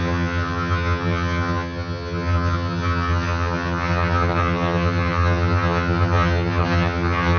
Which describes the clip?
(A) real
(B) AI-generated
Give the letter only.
B